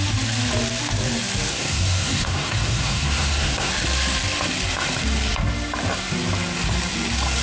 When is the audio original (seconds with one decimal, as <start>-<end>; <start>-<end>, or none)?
0.0-1.5; 3.7-7.4